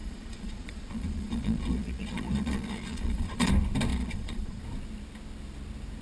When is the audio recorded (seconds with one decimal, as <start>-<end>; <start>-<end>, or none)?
3.5-3.9; 4.6-6.0